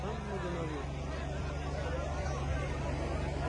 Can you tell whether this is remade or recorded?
recorded